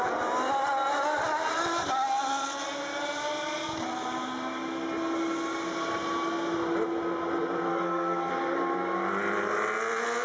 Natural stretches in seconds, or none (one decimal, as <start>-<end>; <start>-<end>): 0.0-7.7; 8.3-10.2

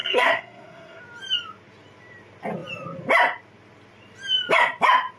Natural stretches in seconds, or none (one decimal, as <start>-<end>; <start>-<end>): 1.0-5.2

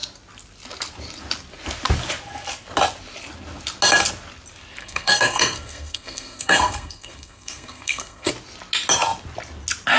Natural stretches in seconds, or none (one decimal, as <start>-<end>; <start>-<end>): 0.0-4.8; 8.3-10.0

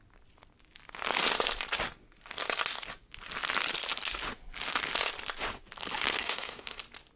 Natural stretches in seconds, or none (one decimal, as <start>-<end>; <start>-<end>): 0.0-6.2; 6.8-7.2

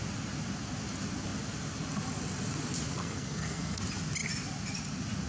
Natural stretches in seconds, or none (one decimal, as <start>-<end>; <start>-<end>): 0.0-3.0; 3.8-5.3